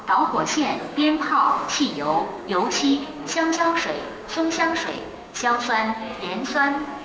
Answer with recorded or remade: remade